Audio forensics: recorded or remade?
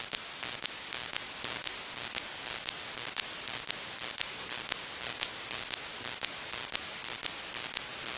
recorded